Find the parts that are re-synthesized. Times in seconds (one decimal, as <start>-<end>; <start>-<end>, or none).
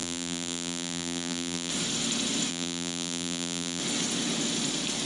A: 0.0-1.7; 2.5-3.8